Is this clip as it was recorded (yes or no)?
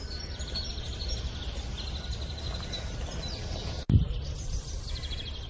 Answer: yes